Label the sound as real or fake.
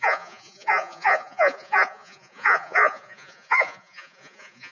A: fake